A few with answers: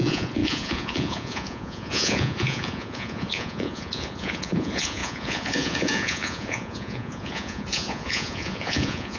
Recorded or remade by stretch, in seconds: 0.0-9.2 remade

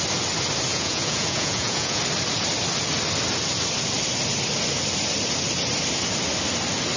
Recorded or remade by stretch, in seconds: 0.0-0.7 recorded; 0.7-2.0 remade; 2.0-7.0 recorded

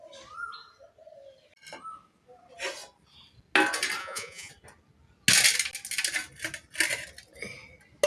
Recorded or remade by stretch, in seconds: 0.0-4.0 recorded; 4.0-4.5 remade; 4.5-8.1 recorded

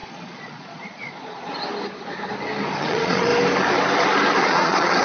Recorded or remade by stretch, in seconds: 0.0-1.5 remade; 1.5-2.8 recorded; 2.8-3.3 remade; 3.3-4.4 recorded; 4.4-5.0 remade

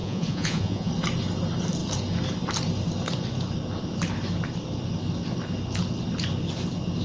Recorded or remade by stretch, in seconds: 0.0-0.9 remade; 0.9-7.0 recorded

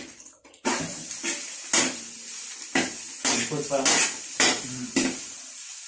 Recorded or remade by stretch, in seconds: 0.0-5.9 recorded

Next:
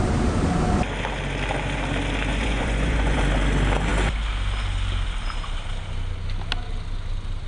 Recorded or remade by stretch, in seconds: 0.0-2.3 recorded; 2.3-3.2 remade; 3.2-7.5 recorded

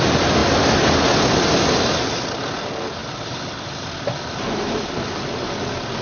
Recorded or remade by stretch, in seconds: 0.0-6.0 recorded